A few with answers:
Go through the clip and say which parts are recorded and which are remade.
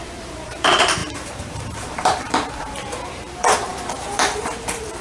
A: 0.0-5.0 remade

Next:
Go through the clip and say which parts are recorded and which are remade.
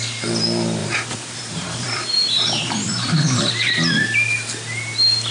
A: 0.0-0.8 recorded; 0.8-4.0 remade; 4.0-5.3 recorded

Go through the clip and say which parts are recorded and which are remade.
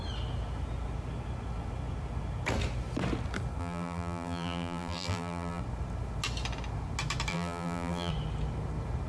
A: 0.0-3.6 recorded; 3.6-5.6 remade; 5.6-7.3 recorded; 7.3-8.1 remade; 8.1-9.1 recorded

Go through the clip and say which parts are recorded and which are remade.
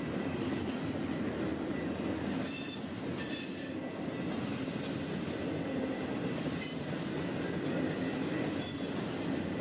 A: 0.0-9.6 recorded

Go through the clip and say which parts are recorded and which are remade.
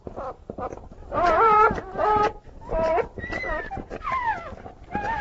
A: 0.0-1.0 recorded; 1.0-4.1 remade; 4.1-5.2 recorded